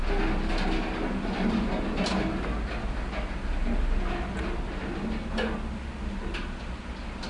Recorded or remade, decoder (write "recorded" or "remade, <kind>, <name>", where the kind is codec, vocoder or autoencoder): recorded